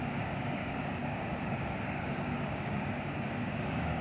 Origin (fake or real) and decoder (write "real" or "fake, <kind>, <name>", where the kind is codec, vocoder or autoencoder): fake, codec, DAC